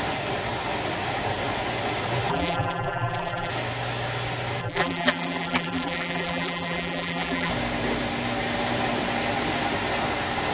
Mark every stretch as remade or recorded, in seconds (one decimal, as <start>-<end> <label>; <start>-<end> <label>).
0.0-2.3 recorded; 2.3-3.5 remade; 3.5-4.6 recorded; 4.6-7.5 remade; 7.5-10.5 recorded

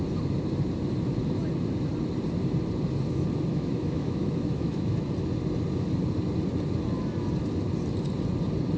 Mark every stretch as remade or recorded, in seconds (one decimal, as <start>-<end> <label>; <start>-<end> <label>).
0.0-3.5 recorded; 3.5-5.0 remade; 5.0-8.8 recorded

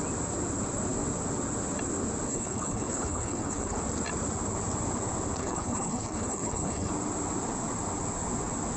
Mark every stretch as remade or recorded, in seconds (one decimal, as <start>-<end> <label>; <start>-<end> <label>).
0.0-2.3 recorded; 2.3-3.8 remade; 3.8-5.4 recorded; 5.4-6.9 remade; 6.9-8.8 recorded

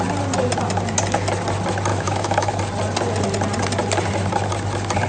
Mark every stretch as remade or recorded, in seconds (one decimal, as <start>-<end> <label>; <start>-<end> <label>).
0.0-1.9 recorded; 1.9-2.6 remade; 2.6-5.1 recorded

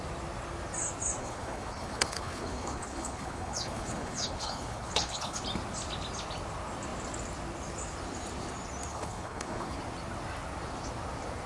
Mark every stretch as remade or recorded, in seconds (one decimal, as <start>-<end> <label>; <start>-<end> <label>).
0.0-1.2 recorded; 1.2-5.4 remade; 5.4-8.9 recorded; 8.9-9.8 remade; 9.8-11.5 recorded

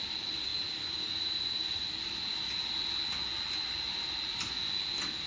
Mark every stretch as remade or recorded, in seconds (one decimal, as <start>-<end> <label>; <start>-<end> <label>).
0.0-5.3 recorded

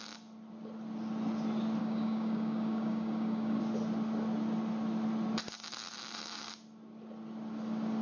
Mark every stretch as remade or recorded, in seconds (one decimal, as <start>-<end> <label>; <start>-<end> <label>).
0.0-1.8 recorded; 1.8-3.6 remade; 3.6-8.0 recorded

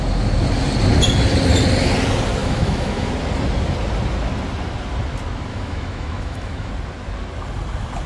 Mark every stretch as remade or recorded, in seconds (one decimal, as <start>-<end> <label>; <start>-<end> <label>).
0.0-2.4 recorded; 2.4-3.1 remade; 3.1-5.5 recorded; 5.5-6.7 remade; 6.7-8.1 recorded